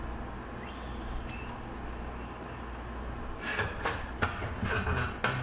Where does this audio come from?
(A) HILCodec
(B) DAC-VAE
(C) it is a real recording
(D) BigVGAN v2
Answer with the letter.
C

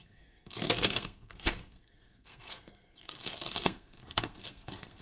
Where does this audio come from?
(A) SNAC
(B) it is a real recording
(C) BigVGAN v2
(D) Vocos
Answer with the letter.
A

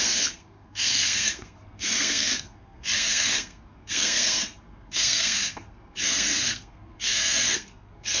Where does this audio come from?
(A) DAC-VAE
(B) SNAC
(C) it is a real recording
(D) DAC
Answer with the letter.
B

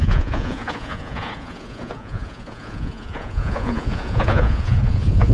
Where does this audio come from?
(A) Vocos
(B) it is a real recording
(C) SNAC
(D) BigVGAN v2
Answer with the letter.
A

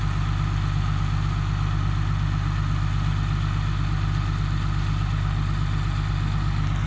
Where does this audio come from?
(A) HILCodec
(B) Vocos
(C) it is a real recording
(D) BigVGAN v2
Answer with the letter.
C